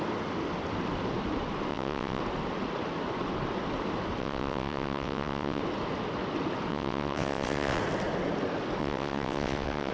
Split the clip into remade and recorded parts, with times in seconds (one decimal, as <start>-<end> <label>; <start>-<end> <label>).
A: 0.0-1.7 recorded; 1.7-2.2 remade; 2.2-4.2 recorded; 4.2-5.6 remade; 5.6-6.7 recorded; 6.7-7.8 remade; 7.8-8.8 recorded; 8.8-9.9 remade